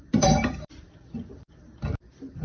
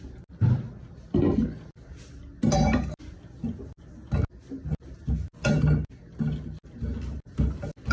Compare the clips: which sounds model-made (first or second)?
first